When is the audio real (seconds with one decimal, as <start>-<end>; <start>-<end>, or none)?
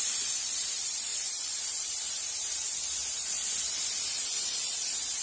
none